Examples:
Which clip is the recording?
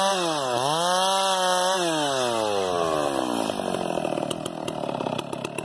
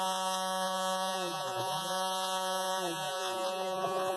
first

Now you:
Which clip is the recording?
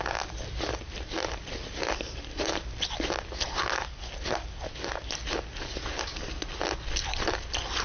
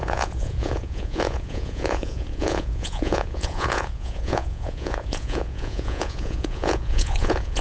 first